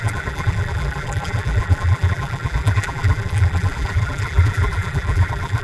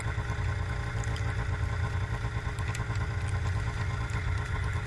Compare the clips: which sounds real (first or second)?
second